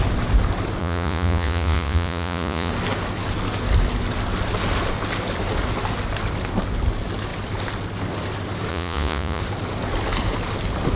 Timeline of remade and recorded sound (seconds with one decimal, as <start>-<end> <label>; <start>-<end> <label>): 0.0-0.8 recorded; 0.8-2.7 remade; 2.7-8.7 recorded; 8.7-9.4 remade; 9.4-11.0 recorded